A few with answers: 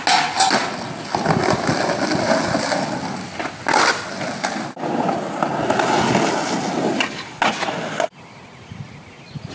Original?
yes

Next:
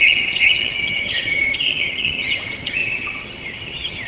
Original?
no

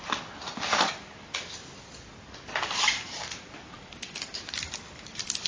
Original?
yes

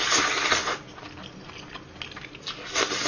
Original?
yes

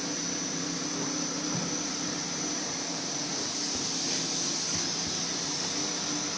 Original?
yes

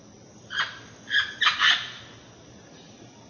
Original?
yes